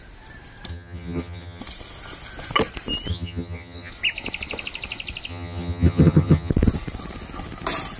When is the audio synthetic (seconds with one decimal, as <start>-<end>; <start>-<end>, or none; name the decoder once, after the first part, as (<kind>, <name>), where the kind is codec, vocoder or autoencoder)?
0.7-1.6 (vocoder, HiFi-GAN); 3.1-3.9; 5.3-6.5